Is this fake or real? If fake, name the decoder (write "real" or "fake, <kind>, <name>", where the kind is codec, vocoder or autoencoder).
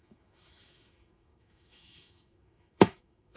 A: fake, autoencoder, DAC-VAE